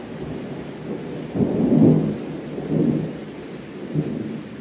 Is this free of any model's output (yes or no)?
yes